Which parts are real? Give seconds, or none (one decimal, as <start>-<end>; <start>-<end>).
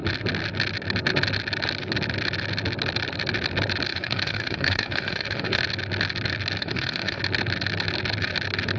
0.0-3.9; 5.6-6.6; 7.2-8.8